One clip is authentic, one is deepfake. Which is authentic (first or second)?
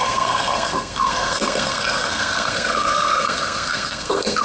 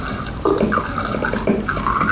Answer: second